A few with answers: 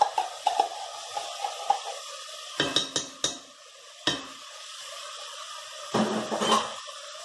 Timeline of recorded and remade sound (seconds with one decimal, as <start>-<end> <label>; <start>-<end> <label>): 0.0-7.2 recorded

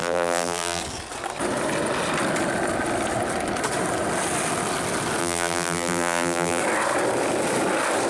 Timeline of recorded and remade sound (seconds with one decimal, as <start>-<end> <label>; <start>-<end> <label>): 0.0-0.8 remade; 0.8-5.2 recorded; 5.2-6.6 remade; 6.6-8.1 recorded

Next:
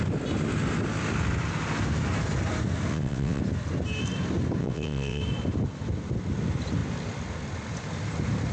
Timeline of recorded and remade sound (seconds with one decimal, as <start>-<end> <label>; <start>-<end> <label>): 0.0-2.9 recorded; 2.9-3.4 remade; 3.4-4.6 recorded; 4.6-5.2 remade; 5.2-8.5 recorded

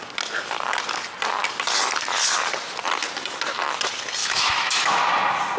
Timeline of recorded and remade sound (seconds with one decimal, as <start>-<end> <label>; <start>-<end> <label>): 0.0-4.2 recorded; 4.2-5.0 remade; 5.0-5.6 recorded

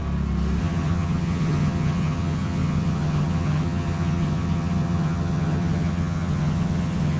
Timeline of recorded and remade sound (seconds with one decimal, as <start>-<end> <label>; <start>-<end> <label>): 0.0-0.6 recorded; 0.6-7.2 remade

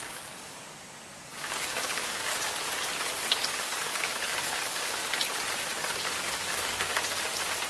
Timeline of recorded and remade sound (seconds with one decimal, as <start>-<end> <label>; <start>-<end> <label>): 0.0-2.3 remade; 2.3-3.5 recorded; 3.5-5.0 remade; 5.0-5.8 recorded; 5.8-6.9 remade; 6.9-7.7 recorded

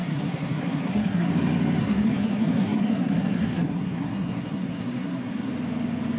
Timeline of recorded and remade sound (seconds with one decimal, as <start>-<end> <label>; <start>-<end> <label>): 0.0-1.3 remade; 1.3-1.8 recorded; 1.8-5.5 remade; 5.5-6.2 recorded